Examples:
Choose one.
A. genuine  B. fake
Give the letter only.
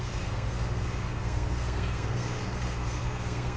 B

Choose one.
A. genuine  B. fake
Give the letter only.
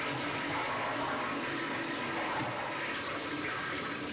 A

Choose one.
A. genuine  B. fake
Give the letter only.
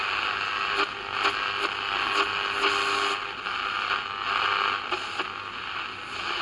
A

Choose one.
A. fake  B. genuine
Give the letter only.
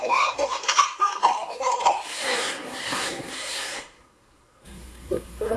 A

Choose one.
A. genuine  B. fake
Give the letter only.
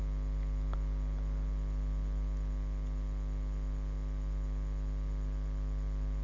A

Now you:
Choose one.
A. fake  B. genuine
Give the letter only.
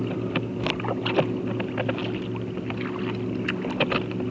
B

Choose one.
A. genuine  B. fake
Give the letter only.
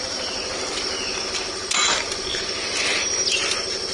A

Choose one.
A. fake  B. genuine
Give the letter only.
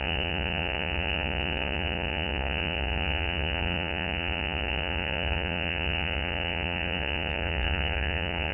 A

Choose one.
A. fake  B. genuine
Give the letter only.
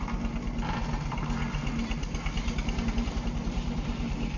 B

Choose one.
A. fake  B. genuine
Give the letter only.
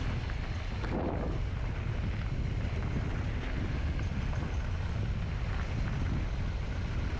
B